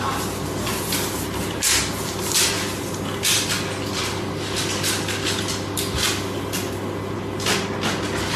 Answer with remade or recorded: recorded